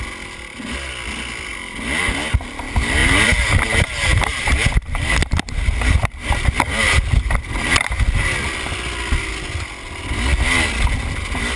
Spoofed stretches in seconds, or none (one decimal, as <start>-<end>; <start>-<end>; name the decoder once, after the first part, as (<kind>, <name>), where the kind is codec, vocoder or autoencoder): 1.5-2.0 (vocoder, BigVGAN v2); 3.0-6.3